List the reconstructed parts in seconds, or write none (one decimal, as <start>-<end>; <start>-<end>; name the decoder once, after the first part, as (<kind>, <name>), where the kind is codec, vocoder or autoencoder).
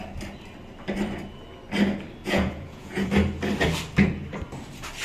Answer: 2.2-3.1 (vocoder, Vocos)